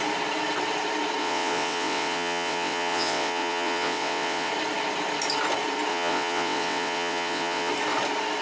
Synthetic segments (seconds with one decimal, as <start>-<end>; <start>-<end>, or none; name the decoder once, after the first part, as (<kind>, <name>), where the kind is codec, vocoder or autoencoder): 1.2-4.5 (vocoder, WaveNeXt); 5.9-7.7